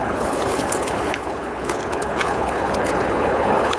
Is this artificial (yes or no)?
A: yes